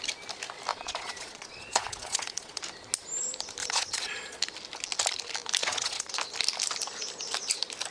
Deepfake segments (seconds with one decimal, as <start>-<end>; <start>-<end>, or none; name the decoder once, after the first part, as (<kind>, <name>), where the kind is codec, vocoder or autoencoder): 0.7-2.6 (vocoder, Vocos); 3.6-4.4; 5.6-6.1